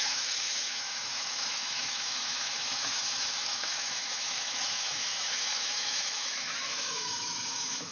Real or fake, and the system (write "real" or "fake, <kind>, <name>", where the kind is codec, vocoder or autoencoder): fake, autoencoder, DAC-VAE